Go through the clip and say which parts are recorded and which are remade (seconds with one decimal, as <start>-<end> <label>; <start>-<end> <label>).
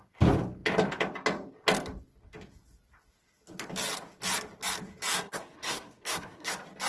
0.0-5.1 recorded; 5.1-6.5 remade; 6.5-6.9 recorded